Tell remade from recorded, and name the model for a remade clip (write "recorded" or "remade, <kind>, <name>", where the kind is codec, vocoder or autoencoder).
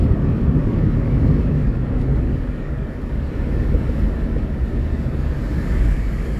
remade, codec, DAC